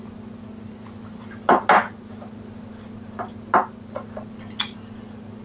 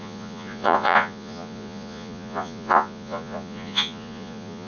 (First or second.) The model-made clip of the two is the second